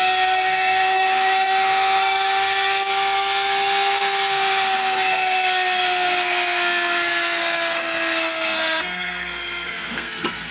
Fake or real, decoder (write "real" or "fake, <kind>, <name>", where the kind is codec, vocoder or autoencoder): fake, codec, SNAC